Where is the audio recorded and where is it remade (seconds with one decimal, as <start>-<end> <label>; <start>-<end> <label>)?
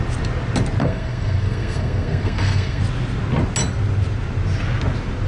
0.0-0.8 recorded; 0.8-2.8 remade; 2.8-5.3 recorded